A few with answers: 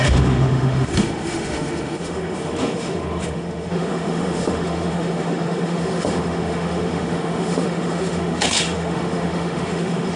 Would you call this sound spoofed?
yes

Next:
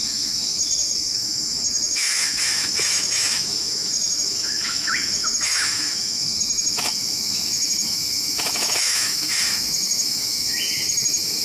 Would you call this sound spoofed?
yes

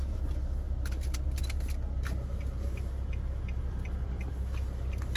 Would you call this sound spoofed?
no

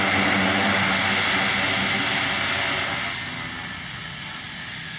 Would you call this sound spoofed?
no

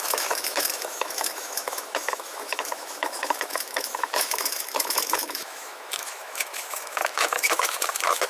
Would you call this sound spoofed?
yes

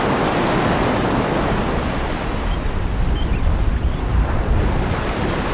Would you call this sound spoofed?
no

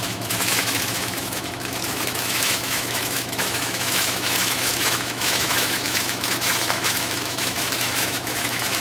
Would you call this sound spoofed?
yes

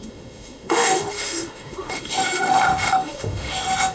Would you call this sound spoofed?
yes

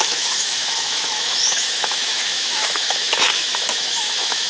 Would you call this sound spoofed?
yes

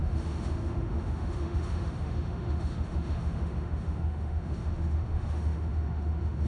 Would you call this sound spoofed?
yes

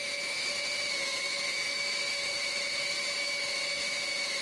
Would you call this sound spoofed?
yes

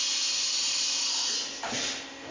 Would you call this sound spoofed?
no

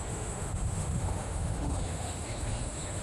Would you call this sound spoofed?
yes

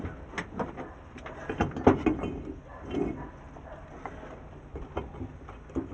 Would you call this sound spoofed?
no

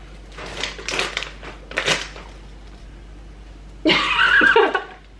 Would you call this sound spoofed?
no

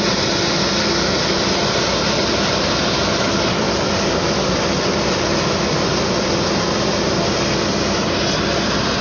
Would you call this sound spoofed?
no